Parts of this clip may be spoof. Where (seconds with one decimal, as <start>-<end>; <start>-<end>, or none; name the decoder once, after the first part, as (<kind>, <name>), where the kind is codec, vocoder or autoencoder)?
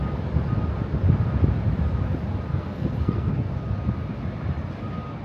2.5-3.5 (codec, SNAC)